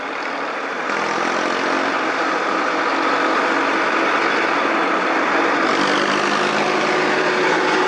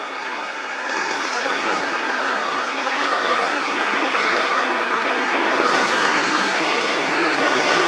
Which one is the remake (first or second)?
second